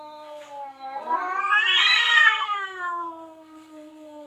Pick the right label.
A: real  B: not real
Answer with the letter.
B